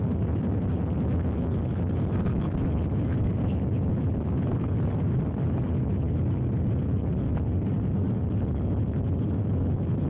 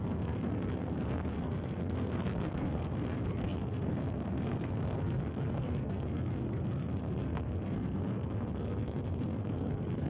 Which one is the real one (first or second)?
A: first